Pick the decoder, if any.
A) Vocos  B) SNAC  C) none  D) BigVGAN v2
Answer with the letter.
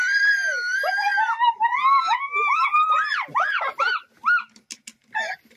C